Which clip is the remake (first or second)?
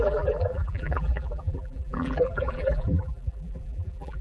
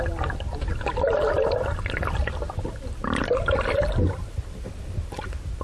first